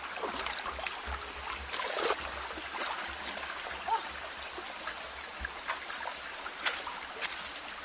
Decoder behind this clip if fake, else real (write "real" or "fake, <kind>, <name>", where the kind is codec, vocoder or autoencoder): real